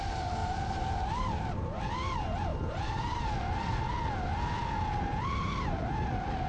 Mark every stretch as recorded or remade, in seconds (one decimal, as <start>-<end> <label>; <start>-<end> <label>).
0.0-0.4 recorded; 0.4-1.8 remade; 1.8-2.5 recorded; 2.5-3.2 remade; 3.2-6.5 recorded